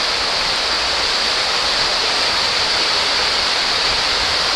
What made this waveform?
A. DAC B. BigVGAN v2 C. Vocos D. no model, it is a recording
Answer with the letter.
D